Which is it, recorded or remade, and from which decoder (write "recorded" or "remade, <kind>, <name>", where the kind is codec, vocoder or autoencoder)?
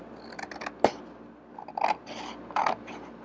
recorded